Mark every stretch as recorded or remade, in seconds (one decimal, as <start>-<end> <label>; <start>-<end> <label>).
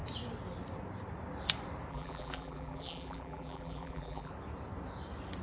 0.0-1.9 recorded; 1.9-4.3 remade; 4.3-5.4 recorded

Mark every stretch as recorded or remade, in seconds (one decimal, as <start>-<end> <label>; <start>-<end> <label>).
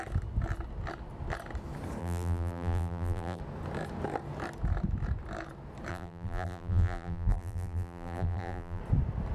0.0-2.0 recorded; 2.0-3.4 remade; 3.4-5.9 recorded; 5.9-8.8 remade; 8.8-9.3 recorded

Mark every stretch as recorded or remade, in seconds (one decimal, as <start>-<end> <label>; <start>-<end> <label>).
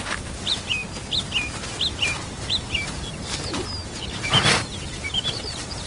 0.0-0.8 remade; 0.8-1.9 recorded; 1.9-5.9 remade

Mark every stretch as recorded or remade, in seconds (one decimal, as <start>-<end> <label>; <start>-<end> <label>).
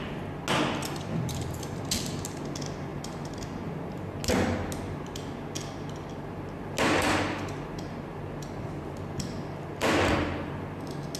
0.0-0.8 recorded; 0.8-1.6 remade; 1.6-2.9 recorded; 2.9-3.4 remade; 3.4-11.2 recorded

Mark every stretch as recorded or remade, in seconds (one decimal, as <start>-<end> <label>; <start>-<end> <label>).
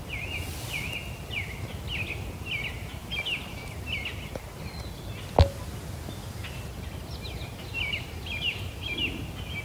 0.0-9.6 recorded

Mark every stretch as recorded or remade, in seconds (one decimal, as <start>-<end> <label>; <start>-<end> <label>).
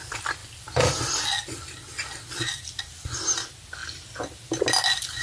0.0-0.4 recorded; 0.4-2.8 remade; 2.8-5.2 recorded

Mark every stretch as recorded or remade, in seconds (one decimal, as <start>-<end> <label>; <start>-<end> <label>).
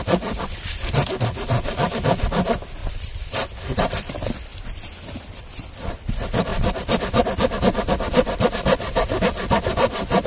0.0-4.5 remade; 4.5-5.4 recorded; 5.4-6.5 remade; 6.5-7.6 recorded; 7.6-10.3 remade